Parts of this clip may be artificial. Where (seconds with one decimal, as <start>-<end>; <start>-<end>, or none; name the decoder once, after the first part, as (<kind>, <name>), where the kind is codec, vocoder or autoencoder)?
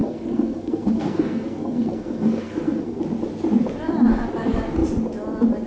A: 0.0-3.0 (codec, SNAC)